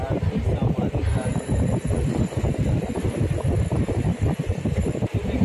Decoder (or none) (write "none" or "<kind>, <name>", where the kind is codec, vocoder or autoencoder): none